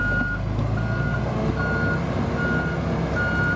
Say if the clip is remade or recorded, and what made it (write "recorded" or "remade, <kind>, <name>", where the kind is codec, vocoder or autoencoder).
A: recorded